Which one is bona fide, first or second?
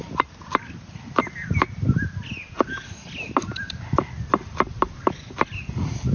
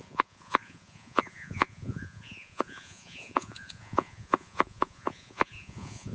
first